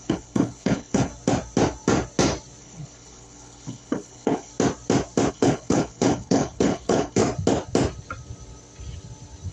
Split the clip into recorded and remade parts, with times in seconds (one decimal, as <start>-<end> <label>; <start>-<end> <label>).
0.0-1.1 remade; 1.1-2.6 recorded; 2.6-4.5 remade; 4.5-5.3 recorded; 5.3-7.2 remade; 7.2-9.5 recorded